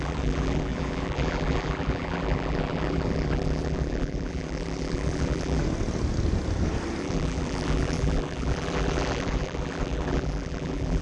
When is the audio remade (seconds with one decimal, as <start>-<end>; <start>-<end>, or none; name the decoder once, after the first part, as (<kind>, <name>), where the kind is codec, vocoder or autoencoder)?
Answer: 0.0-5.6 (vocoder, BigVGAN v2); 7.0-11.0